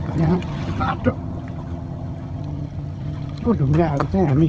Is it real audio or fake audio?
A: fake